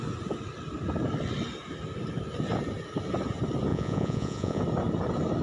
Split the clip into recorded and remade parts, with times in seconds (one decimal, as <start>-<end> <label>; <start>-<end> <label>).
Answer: 0.0-3.7 recorded; 3.7-4.6 remade; 4.6-5.4 recorded